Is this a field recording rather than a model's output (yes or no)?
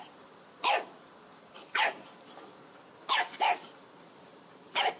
yes